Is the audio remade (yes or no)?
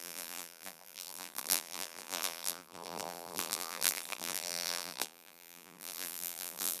yes